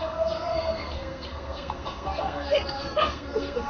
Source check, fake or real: fake